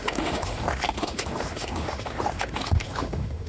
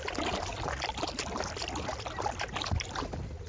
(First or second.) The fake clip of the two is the first